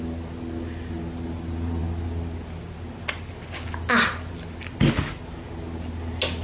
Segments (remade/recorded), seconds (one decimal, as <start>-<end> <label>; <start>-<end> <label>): 0.0-6.4 recorded